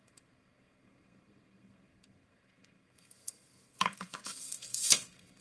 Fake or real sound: fake